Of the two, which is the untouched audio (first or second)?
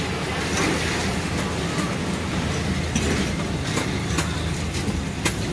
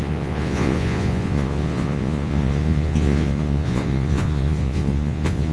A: first